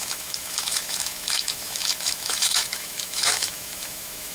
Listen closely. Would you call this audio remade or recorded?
remade